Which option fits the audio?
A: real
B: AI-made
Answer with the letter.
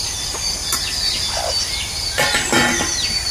A